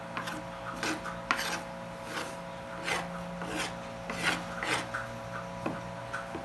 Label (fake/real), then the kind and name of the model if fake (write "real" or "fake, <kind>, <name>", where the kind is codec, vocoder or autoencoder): real